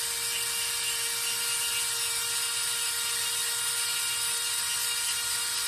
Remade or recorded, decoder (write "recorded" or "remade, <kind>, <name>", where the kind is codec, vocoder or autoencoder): recorded